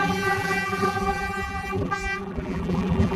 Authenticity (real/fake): fake